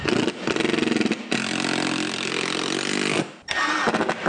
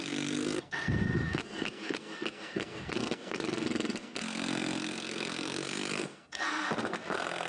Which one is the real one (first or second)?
first